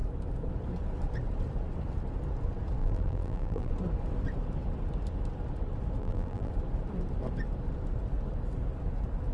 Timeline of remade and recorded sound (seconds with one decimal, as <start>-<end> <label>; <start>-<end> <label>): 0.0-2.8 recorded; 2.8-3.7 remade; 3.7-6.0 recorded; 6.0-6.5 remade; 6.5-9.3 recorded